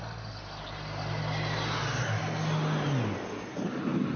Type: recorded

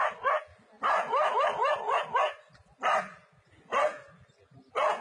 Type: recorded